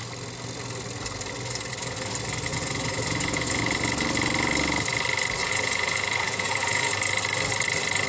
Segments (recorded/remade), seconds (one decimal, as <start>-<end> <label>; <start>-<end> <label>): 0.0-2.5 recorded; 2.5-3.6 remade; 3.6-5.4 recorded; 5.4-6.9 remade; 6.9-8.1 recorded